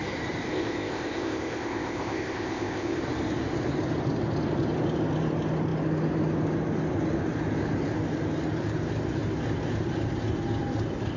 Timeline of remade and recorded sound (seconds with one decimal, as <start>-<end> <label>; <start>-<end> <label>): 0.0-0.5 recorded; 0.5-3.0 remade; 3.0-11.2 recorded